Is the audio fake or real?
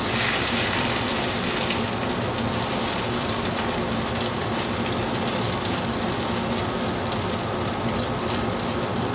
real